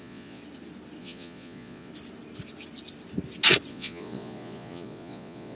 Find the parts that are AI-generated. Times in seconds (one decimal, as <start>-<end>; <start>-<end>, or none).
0.0-0.4; 1.0-1.9; 3.7-5.5